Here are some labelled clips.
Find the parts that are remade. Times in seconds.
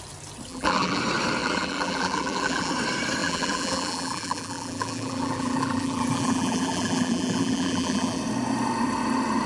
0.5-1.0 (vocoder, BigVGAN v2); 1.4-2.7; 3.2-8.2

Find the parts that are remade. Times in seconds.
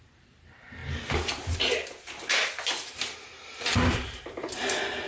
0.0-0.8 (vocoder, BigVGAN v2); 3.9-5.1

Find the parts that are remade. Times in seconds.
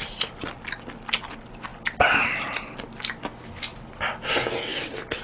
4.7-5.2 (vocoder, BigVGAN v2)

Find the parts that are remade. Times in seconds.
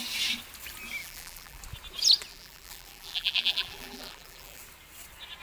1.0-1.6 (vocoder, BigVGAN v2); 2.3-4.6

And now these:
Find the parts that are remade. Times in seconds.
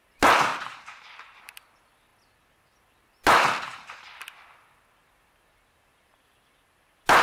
0.5-1.4 (vocoder, BigVGAN v2)